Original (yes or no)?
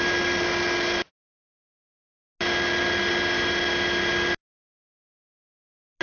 yes